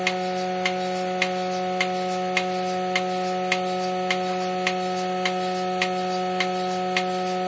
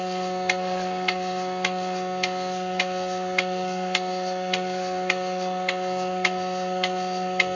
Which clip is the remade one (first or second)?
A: second